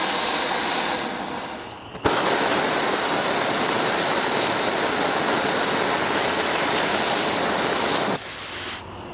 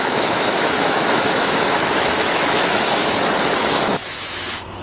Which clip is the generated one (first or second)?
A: second